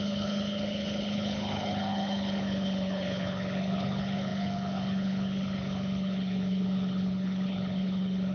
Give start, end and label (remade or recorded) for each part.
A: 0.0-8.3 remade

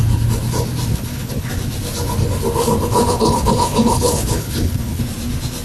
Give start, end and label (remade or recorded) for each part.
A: 0.0-0.9 recorded; 0.9-1.5 remade; 1.5-3.1 recorded; 3.1-5.0 remade; 5.0-5.6 recorded

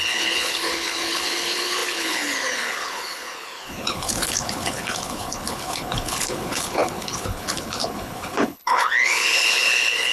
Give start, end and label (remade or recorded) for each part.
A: 0.0-10.1 remade

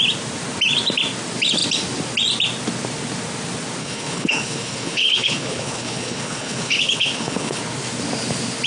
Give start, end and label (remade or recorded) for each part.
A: 0.0-3.8 recorded; 3.8-7.6 remade; 7.6-8.7 recorded

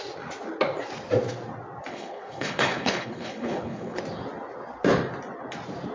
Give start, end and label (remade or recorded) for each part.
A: 0.0-1.9 recorded; 1.9-4.0 remade; 4.0-5.9 recorded